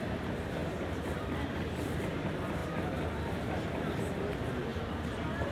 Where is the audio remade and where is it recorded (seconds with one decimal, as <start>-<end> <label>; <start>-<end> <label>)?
0.0-2.6 recorded; 2.6-4.2 remade; 4.2-4.7 recorded; 4.7-5.5 remade